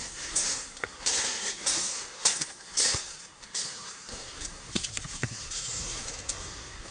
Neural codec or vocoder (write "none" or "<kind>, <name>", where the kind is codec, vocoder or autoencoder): codec, SNAC